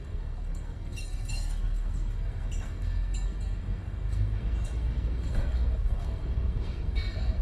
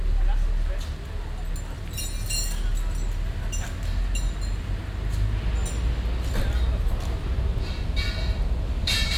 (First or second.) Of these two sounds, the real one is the second